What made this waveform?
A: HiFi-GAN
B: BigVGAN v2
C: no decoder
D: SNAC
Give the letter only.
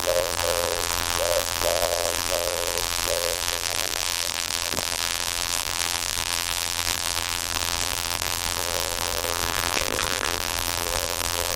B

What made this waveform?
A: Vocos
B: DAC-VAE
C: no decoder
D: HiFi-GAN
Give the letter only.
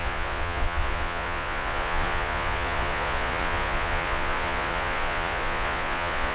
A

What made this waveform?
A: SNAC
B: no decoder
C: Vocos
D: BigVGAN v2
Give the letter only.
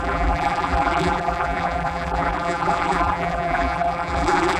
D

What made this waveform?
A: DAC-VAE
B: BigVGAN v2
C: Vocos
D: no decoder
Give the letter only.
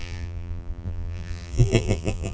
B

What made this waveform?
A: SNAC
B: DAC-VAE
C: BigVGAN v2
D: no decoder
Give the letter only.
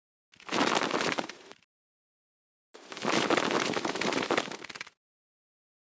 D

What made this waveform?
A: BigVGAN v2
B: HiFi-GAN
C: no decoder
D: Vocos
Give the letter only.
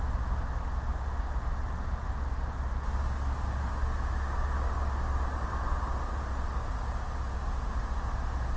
C